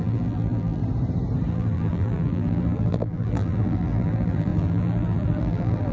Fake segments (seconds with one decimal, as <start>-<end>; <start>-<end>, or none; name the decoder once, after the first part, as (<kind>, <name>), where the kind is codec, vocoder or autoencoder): 0.0-0.8 (vocoder, BigVGAN v2); 1.5-5.9

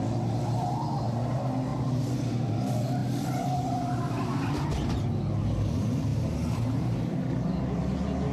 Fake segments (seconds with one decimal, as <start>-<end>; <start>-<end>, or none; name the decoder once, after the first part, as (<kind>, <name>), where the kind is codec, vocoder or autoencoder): 1.7-2.5 (vocoder, BigVGAN v2); 6.1-7.2